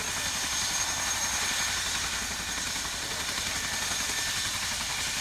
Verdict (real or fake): real